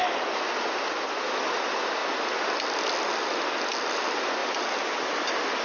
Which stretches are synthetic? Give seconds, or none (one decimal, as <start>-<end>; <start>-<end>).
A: none